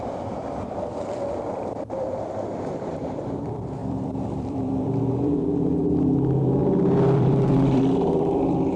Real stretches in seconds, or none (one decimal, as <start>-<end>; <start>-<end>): none